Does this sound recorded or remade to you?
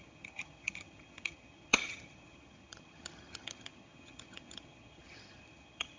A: remade